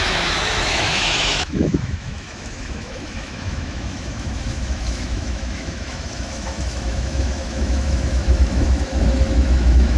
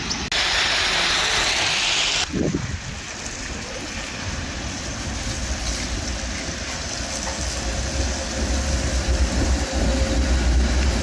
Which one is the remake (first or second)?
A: first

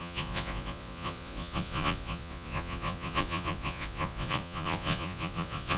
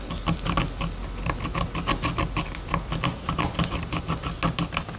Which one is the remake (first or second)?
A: first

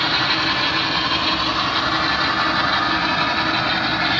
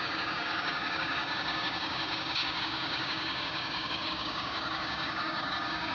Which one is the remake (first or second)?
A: second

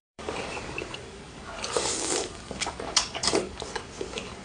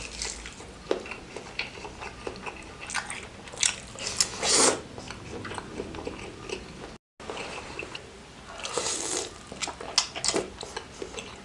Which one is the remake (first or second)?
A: first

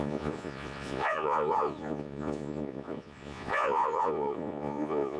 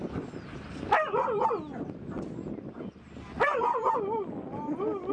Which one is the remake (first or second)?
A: first